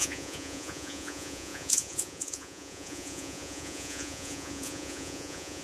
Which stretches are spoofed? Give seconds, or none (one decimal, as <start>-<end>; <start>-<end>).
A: 0.0-5.6